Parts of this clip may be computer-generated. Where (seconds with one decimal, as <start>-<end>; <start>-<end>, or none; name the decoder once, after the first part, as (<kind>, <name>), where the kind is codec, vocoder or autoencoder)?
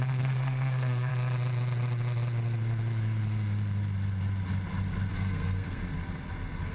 0.0-1.1 (codec, SNAC); 5.1-5.8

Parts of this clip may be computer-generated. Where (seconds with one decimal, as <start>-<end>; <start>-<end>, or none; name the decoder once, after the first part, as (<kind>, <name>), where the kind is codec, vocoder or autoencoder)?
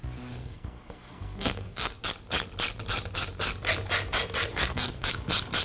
0.4-2.0 (codec, SNAC); 4.5-5.1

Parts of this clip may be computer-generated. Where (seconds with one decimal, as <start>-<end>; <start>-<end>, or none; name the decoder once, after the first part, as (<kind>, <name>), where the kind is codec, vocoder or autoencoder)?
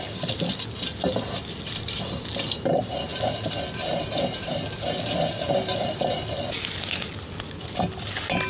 none